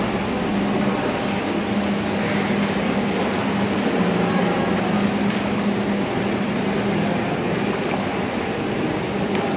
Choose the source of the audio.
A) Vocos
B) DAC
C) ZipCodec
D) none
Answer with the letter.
D